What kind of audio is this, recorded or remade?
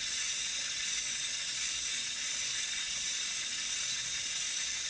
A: recorded